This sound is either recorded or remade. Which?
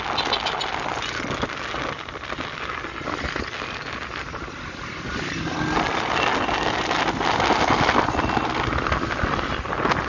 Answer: recorded